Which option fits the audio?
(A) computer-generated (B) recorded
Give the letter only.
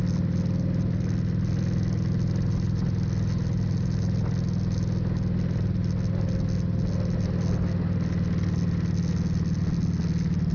B